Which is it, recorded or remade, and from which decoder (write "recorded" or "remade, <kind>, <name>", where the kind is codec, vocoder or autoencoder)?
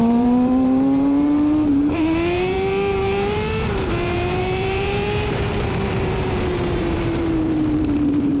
remade, vocoder, BigVGAN v2